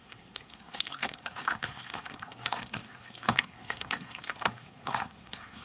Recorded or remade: remade